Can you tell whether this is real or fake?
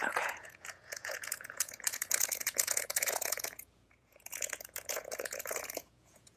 fake